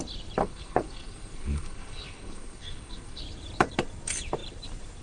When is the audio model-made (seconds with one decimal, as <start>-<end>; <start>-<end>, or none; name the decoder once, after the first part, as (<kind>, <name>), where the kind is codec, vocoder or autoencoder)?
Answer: 0.4-3.2 (codec, SNAC)